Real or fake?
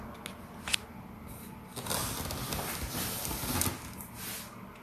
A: real